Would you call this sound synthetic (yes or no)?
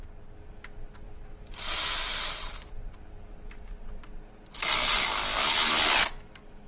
no